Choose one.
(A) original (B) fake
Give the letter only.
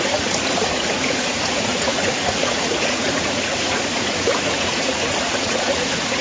B